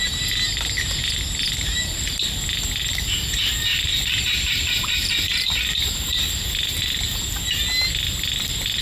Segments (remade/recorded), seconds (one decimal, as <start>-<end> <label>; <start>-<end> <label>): 0.0-2.8 recorded; 2.8-3.3 remade; 3.3-3.7 recorded; 3.7-6.8 remade; 6.8-8.8 recorded